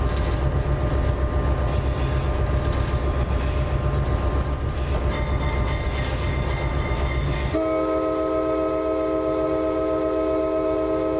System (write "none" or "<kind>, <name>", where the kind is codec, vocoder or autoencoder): none